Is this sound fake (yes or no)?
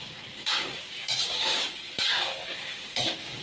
yes